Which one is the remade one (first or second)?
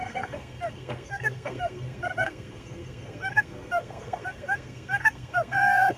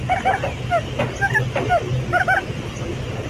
first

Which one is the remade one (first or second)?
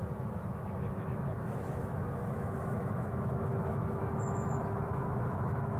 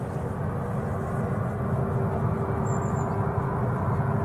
first